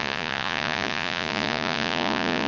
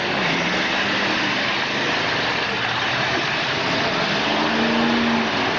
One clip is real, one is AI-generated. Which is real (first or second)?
second